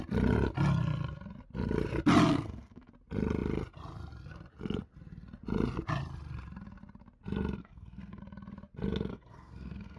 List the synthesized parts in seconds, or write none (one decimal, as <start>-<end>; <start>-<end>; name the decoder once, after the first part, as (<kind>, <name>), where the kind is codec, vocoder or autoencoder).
2.3-2.9 (codec, SNAC); 7.6-8.2; 9.1-10.0